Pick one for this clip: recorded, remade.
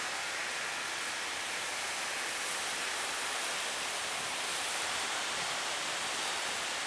recorded